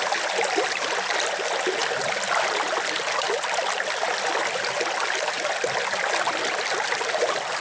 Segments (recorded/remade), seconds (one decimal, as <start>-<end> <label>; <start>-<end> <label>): 0.0-7.6 recorded